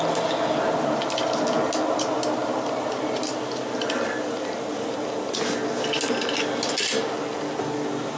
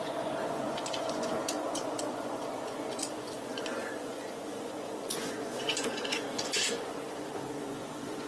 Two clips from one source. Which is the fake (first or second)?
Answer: second